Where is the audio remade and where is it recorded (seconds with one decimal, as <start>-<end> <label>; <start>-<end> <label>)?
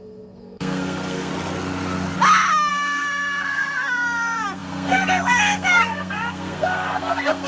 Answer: 0.0-1.3 remade; 1.3-2.7 recorded; 2.7-7.5 remade